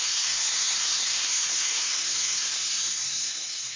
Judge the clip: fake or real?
fake